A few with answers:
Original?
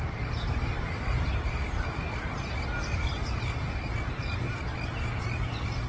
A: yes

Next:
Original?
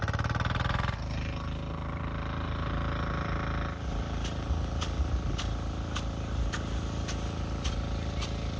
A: yes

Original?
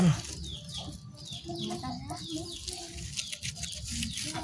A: yes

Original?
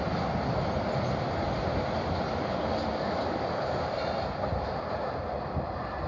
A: yes